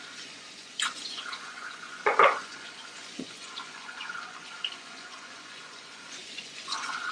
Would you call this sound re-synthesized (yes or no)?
yes